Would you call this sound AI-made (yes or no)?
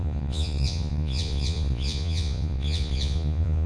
yes